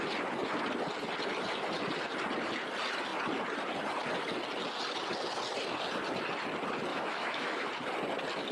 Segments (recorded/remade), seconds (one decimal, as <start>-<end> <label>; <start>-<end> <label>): 0.0-6.9 recorded; 6.9-7.7 remade; 7.7-8.5 recorded